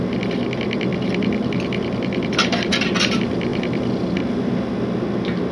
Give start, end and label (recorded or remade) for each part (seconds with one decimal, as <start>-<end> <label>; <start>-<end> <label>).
0.0-5.5 recorded